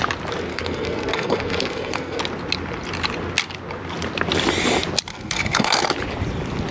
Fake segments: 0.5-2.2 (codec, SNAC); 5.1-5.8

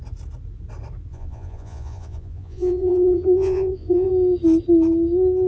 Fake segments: 1.1-4.1 (vocoder, Vocos)

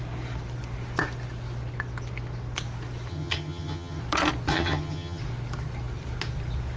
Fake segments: 3.1-4.0 (vocoder, HiFi-GAN); 4.5-5.2

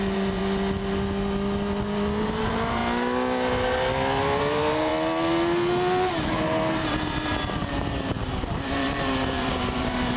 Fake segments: 0.0-0.4 (vocoder, BigVGAN v2); 2.2-2.8; 4.4-4.9; 6.3-10.2